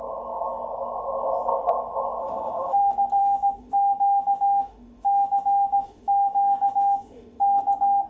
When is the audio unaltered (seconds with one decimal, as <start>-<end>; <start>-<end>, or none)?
0.0-2.2; 2.8-3.2; 7.4-8.1